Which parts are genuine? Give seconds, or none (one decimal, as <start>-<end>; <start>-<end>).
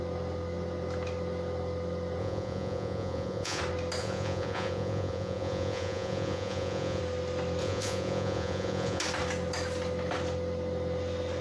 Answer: 0.0-2.2; 3.6-4.0; 7.0-7.6; 9.0-11.4